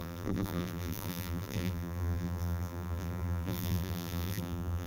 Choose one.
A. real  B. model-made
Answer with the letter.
B